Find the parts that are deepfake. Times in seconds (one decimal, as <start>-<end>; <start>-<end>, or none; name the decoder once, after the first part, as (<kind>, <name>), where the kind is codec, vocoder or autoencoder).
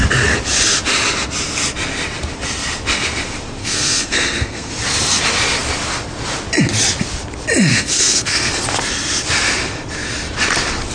3.6-4.7 (codec, SNAC); 7.7-8.5